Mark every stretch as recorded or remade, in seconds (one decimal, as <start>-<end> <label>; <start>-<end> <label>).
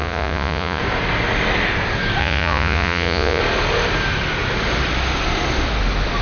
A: 0.0-0.8 remade; 0.8-2.2 recorded; 2.2-3.4 remade; 3.4-6.2 recorded